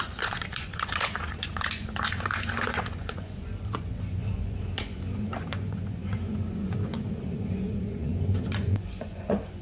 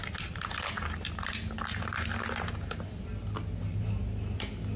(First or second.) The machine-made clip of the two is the first